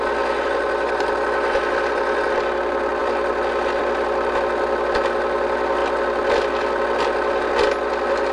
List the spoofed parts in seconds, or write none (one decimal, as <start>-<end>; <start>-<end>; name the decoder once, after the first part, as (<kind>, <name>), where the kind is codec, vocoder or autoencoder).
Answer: none